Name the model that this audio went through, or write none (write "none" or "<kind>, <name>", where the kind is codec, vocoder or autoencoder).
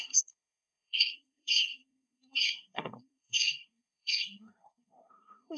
codec, SNAC